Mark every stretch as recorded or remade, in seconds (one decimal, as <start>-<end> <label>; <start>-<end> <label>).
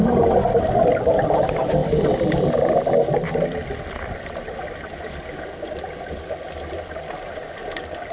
0.0-8.1 recorded